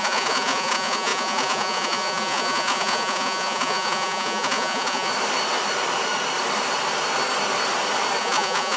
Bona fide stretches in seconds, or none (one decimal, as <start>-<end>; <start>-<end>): 5.1-8.2